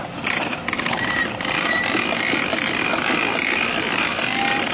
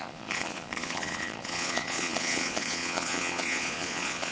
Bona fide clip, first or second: first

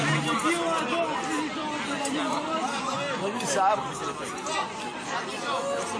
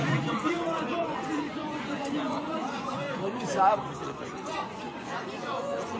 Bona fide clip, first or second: first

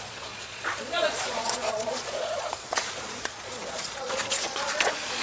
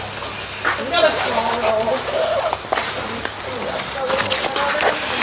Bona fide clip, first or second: second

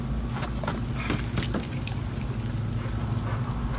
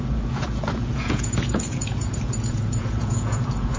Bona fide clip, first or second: first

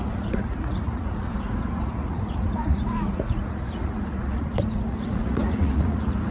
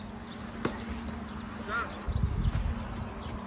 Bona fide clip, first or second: second